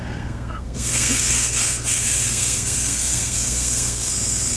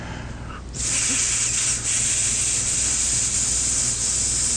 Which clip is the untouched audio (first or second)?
second